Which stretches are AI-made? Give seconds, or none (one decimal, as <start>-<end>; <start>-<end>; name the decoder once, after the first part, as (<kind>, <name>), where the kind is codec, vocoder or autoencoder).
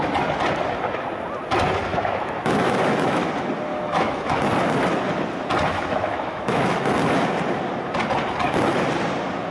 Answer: 1.9-3.3 (autoencoder, DAC-VAE); 3.7-4.3; 5.7-6.8